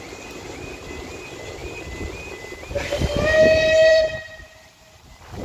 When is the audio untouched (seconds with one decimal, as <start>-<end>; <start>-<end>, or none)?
0.0-3.9